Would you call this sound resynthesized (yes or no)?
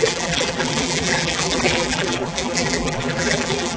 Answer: yes